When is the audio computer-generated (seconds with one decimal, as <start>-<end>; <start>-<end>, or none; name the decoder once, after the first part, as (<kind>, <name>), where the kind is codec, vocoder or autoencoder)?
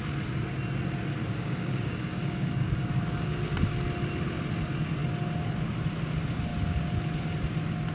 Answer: 1.2-3.3 (codec, DAC)